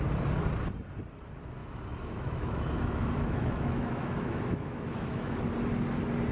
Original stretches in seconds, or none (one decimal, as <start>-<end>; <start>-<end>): 0.0-1.6; 5.4-6.3